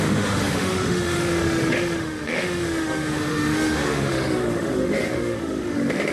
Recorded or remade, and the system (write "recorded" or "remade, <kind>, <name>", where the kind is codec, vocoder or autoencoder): remade, autoencoder, DAC-VAE